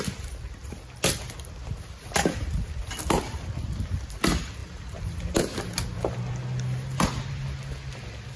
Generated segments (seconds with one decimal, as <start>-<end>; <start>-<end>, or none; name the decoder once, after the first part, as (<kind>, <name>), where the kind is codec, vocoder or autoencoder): none